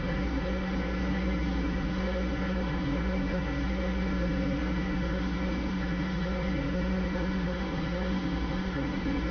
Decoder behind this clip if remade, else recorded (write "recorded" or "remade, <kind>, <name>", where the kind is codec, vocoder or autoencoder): remade, codec, SNAC